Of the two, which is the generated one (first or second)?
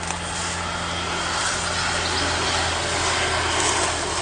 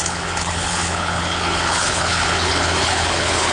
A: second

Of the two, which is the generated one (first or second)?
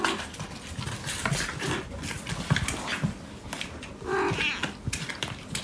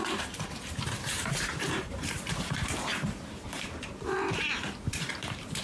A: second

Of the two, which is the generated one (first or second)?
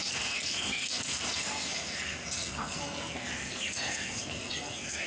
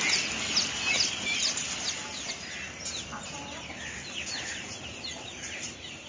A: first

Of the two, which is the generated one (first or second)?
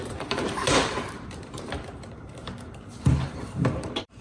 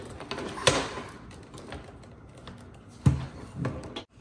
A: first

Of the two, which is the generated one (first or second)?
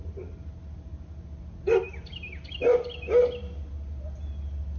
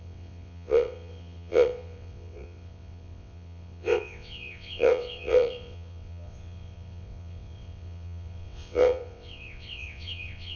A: second